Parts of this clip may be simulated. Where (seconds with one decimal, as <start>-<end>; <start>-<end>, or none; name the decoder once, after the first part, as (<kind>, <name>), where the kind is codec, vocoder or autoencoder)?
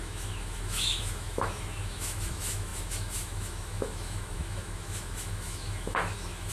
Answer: 0.0-6.5 (autoencoder, DAC-VAE)